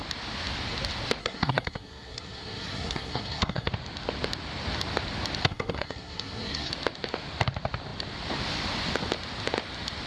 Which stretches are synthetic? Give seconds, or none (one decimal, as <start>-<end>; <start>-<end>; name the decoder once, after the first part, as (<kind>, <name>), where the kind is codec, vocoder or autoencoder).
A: 1.2-3.7 (codec, SNAC); 5.4-6.7